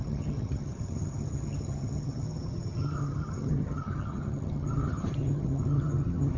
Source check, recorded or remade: remade